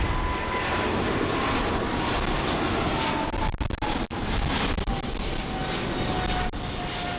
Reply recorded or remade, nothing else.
recorded